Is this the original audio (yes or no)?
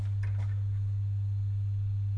yes